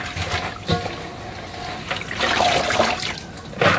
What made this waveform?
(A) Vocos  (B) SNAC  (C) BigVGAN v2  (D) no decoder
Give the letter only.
D